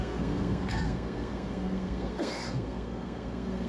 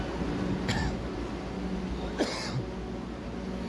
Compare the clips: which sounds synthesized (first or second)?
first